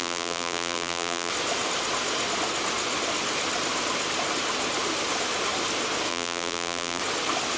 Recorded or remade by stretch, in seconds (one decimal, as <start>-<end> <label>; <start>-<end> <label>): 0.0-1.3 remade; 1.3-6.1 recorded; 6.1-7.0 remade; 7.0-7.6 recorded